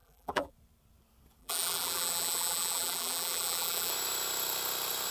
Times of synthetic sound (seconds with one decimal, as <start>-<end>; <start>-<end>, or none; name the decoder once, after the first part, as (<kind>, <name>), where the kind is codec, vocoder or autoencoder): 0.0-0.5 (vocoder, BigVGAN v2); 1.4-3.9